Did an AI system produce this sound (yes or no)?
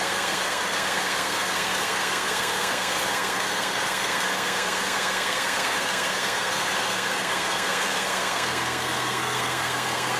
yes